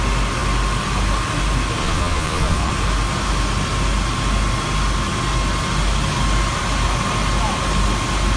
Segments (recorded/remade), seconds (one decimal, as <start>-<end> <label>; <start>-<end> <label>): 0.0-1.8 recorded; 1.8-2.7 remade; 2.7-8.4 recorded